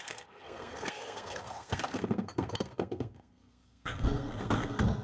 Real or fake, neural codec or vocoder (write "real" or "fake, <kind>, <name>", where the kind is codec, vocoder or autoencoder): fake, codec, SNAC